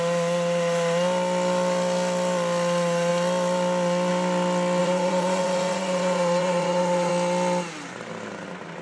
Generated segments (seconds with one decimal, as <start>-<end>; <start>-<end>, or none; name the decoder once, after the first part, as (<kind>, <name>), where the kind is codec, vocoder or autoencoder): 4.8-7.1 (vocoder, Vocos)